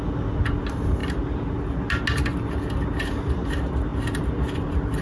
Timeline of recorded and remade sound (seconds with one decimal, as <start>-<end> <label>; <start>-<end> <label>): 0.0-5.0 recorded